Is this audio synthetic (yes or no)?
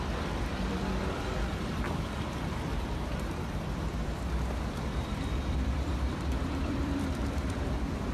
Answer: yes